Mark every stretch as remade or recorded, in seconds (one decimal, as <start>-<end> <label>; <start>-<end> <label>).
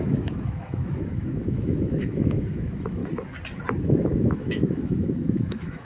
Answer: 0.0-3.0 remade; 3.0-3.8 recorded; 3.8-5.8 remade